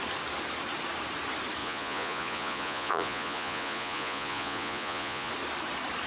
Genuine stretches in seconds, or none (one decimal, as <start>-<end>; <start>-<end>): 0.0-1.6; 5.3-6.1